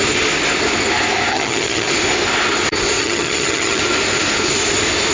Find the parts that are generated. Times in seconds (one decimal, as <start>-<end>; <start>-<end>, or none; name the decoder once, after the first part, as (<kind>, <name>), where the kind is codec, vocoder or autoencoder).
1.3-1.9 (vocoder, HiFi-GAN); 3.0-3.8